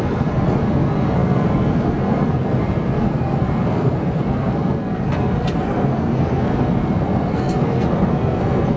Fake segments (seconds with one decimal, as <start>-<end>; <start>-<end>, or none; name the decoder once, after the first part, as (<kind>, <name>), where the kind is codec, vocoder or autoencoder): 0.0-8.8 (codec, SNAC)